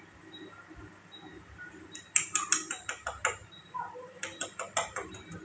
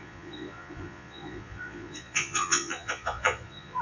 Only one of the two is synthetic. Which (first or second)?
second